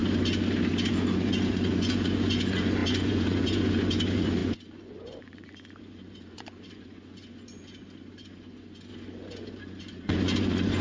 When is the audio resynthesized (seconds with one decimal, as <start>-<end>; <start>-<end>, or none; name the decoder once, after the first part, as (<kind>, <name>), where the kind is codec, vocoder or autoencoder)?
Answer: 0.9-10.8 (vocoder, Vocos)